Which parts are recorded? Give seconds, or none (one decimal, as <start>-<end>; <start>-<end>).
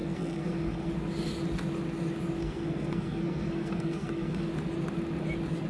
0.9-2.4; 4.5-5.7